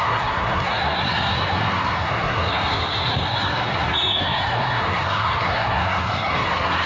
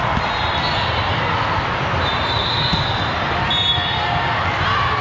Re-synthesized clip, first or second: first